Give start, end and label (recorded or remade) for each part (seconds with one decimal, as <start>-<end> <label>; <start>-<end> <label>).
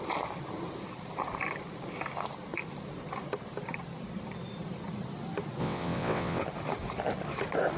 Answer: 0.0-5.6 recorded; 5.6-6.4 remade; 6.4-7.8 recorded